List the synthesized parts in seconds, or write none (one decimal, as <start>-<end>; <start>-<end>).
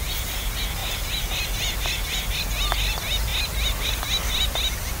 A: 0.8-2.4; 3.3-3.9